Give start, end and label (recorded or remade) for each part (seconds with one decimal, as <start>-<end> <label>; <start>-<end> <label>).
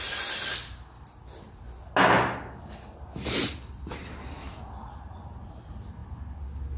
0.0-6.8 recorded